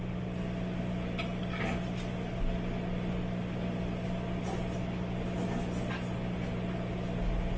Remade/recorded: recorded